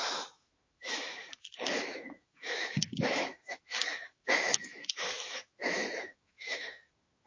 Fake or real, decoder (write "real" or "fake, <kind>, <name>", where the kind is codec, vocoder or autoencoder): fake, autoencoder, DAC-VAE